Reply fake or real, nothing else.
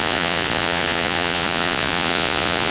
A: fake